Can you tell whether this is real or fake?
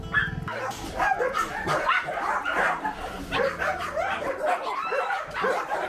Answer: fake